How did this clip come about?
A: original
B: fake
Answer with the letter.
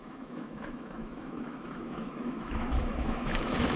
B